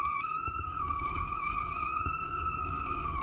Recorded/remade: remade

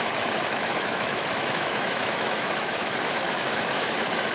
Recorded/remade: remade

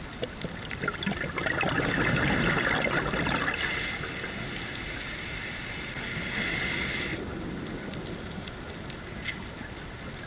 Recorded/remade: recorded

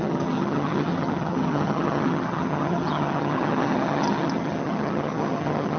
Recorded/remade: remade